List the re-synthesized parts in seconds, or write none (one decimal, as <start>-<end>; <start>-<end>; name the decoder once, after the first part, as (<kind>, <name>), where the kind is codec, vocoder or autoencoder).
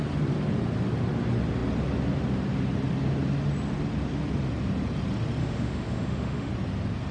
5.4-6.5 (autoencoder, DAC-VAE)